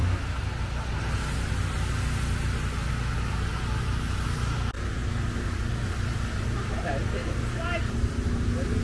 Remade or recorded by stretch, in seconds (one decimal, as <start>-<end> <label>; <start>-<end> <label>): 0.0-8.8 recorded